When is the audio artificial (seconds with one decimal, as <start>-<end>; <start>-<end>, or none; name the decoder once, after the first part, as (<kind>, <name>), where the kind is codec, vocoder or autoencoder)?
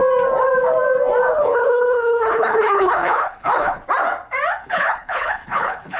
1.3-3.8 (codec, HILCodec); 4.6-6.0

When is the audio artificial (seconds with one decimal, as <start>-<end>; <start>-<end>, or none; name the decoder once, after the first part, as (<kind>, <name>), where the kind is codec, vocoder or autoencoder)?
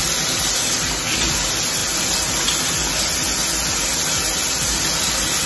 none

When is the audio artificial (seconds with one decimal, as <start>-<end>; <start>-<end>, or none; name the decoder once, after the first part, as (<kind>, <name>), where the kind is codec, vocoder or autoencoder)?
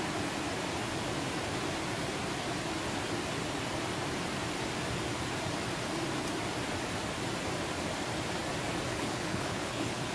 8.9-10.1 (codec, HILCodec)